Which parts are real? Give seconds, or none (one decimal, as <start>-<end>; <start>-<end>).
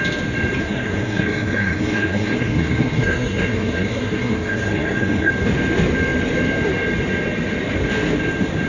0.0-0.6; 5.3-8.7